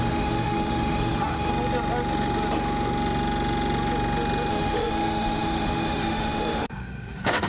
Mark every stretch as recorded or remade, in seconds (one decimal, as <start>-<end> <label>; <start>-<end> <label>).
0.0-1.5 remade; 1.5-4.5 recorded; 4.5-7.5 remade